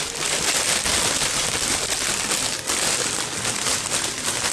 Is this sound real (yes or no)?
yes